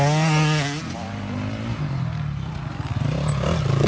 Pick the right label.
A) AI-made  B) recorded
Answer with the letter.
B